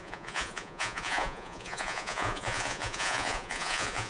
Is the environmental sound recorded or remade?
remade